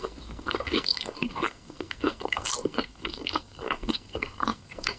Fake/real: fake